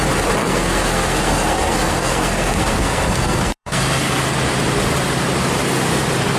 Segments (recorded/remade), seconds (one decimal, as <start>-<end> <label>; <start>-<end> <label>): 0.0-0.4 recorded; 0.4-4.2 remade; 4.2-6.4 recorded